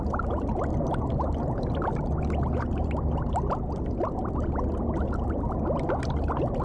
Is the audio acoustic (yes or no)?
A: yes